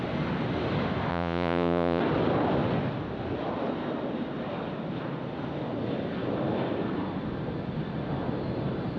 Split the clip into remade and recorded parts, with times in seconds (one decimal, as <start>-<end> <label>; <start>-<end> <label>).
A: 0.0-1.1 recorded; 1.1-2.0 remade; 2.0-9.0 recorded